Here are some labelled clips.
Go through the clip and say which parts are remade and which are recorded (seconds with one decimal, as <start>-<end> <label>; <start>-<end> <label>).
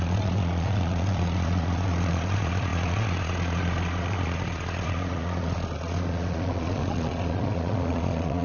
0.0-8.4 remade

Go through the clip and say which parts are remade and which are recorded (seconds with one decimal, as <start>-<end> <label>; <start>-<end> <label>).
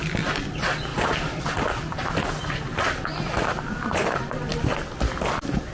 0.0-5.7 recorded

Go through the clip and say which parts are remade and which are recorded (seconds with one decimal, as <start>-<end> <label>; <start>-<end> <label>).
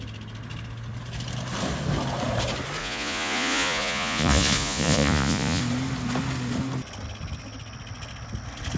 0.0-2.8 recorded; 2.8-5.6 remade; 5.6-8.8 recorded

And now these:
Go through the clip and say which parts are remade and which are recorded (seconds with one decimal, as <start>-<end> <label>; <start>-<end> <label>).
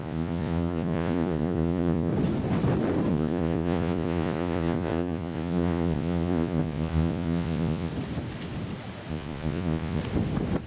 0.0-2.1 remade; 2.1-3.1 recorded; 3.1-7.9 remade; 7.9-9.1 recorded; 9.1-10.0 remade; 10.0-10.7 recorded